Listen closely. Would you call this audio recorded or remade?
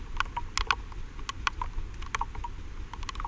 recorded